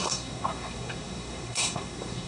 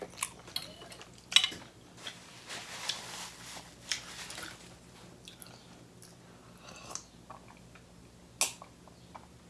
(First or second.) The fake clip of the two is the first